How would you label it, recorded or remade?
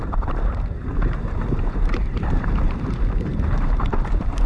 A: remade